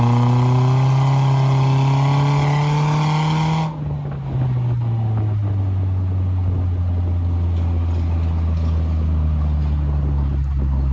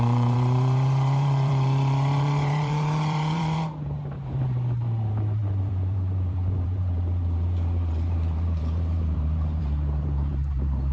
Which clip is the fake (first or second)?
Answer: second